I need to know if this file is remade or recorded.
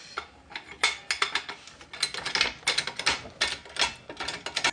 recorded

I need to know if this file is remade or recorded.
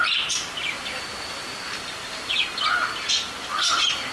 recorded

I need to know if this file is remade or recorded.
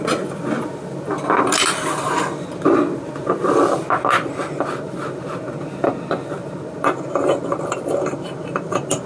remade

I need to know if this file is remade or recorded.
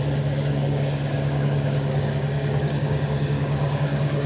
remade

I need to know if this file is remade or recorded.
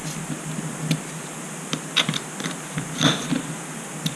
recorded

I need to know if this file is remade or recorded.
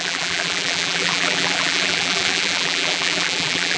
remade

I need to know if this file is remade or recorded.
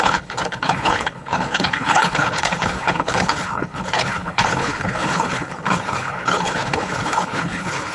remade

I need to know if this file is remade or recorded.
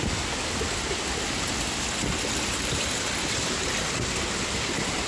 recorded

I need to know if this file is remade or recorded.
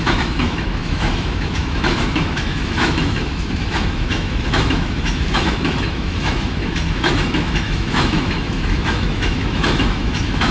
remade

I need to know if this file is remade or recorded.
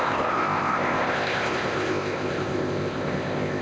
remade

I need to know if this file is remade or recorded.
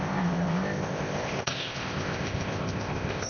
remade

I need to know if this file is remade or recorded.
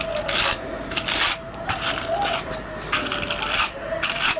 recorded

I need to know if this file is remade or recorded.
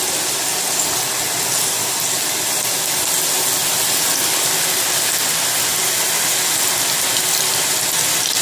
recorded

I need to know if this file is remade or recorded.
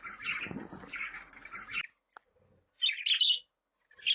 recorded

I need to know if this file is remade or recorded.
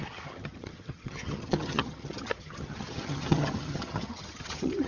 remade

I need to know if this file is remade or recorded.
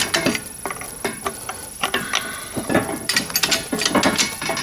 recorded